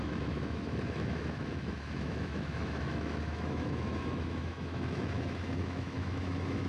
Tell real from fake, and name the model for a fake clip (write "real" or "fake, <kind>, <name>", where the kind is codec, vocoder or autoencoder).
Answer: fake, autoencoder, DAC-VAE